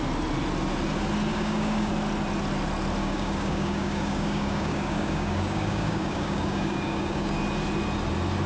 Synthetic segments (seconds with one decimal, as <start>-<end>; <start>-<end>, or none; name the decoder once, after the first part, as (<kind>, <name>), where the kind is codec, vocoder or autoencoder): 1.3-1.9 (codec, DAC); 3.0-7.4